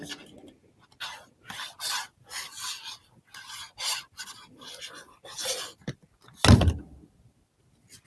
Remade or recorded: recorded